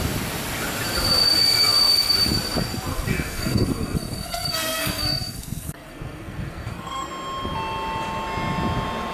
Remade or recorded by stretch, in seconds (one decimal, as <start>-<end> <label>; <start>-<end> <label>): 0.0-2.9 recorded; 2.9-7.1 remade; 7.1-9.1 recorded

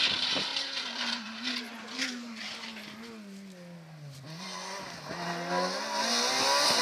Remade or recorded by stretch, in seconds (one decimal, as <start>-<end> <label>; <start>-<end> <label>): 0.0-0.5 recorded; 0.5-2.4 remade; 2.4-6.8 recorded

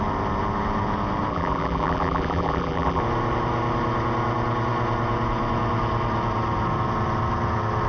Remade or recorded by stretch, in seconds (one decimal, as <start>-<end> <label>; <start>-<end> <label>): 0.0-1.3 recorded; 1.3-3.0 remade; 3.0-7.9 recorded

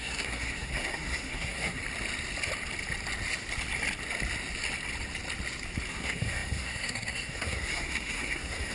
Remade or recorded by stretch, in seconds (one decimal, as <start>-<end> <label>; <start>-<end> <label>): 0.0-1.8 remade; 1.8-5.9 recorded; 5.9-8.7 remade

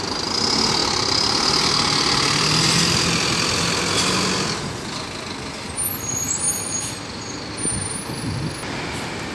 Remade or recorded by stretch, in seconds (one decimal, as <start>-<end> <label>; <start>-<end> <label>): 0.0-9.3 recorded

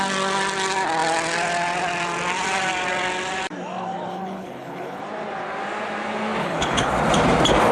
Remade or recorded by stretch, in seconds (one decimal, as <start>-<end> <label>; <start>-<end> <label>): 0.0-4.1 recorded; 4.1-5.0 remade; 5.0-6.4 recorded; 6.4-6.9 remade; 6.9-7.7 recorded